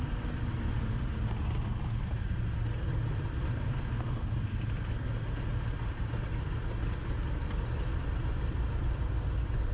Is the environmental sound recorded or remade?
recorded